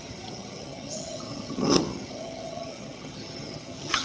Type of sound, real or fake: fake